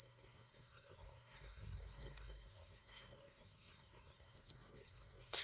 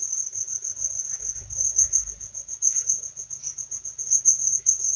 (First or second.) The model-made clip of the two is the first